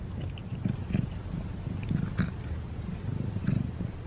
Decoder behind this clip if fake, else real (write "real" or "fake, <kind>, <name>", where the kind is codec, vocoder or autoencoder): real